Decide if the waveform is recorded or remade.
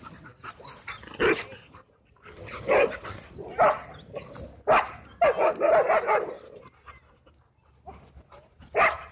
recorded